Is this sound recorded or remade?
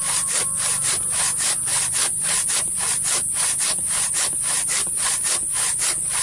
recorded